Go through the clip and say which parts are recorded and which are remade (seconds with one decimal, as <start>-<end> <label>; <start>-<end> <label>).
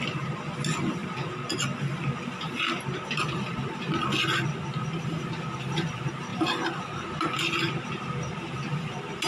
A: 0.0-1.0 remade; 1.0-5.7 recorded; 5.7-6.3 remade; 6.3-9.3 recorded